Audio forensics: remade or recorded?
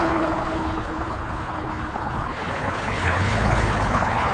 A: remade